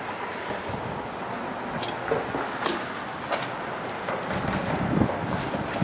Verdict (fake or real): real